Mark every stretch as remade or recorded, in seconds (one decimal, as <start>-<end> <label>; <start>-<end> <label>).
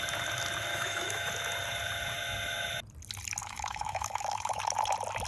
0.0-0.7 recorded; 0.7-1.3 remade; 1.3-3.4 recorded; 3.4-4.6 remade; 4.6-5.3 recorded